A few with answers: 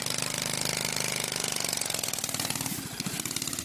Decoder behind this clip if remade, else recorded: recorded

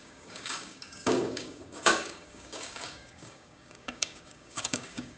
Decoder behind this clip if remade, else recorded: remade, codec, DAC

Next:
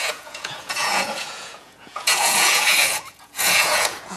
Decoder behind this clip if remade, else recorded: remade, vocoder, Vocos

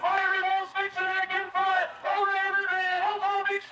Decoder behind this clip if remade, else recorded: remade, codec, SNAC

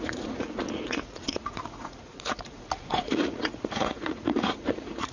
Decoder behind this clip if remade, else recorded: remade, vocoder, Vocos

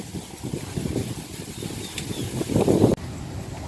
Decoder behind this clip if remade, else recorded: recorded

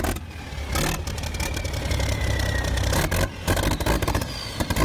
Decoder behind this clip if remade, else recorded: recorded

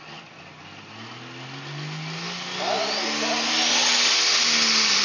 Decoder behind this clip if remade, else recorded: recorded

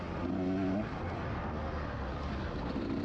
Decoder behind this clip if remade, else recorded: recorded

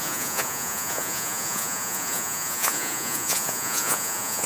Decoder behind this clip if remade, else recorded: remade, vocoder, Vocos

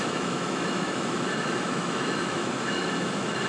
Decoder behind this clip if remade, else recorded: remade, autoencoder, DAC-VAE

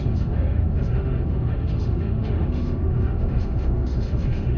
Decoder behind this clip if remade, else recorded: remade, autoencoder, DAC-VAE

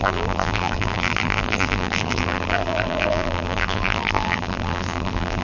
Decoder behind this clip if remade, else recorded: remade, vocoder, BigVGAN v2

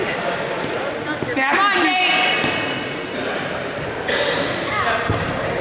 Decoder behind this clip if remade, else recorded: recorded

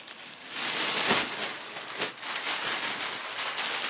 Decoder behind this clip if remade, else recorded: recorded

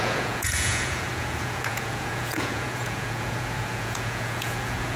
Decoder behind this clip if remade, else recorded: remade, vocoder, Vocos